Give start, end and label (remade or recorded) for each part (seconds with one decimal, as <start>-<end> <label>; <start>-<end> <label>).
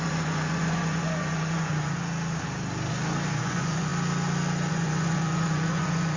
0.0-1.7 remade; 1.7-3.4 recorded; 3.4-3.9 remade; 3.9-4.7 recorded; 4.7-6.2 remade